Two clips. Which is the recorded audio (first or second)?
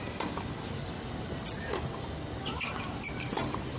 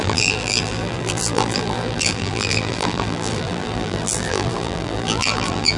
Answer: first